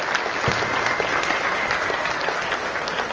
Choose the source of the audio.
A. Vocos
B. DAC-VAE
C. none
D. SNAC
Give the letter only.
C